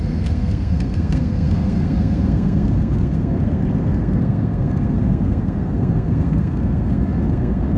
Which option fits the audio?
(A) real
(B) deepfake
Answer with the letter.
B